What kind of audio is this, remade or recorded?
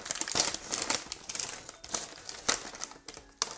recorded